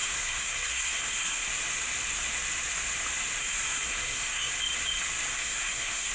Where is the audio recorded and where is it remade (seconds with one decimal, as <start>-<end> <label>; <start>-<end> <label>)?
0.0-1.5 remade; 1.5-3.4 recorded; 3.4-4.5 remade; 4.5-5.3 recorded; 5.3-6.1 remade